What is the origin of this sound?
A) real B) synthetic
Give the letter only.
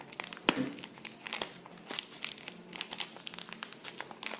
A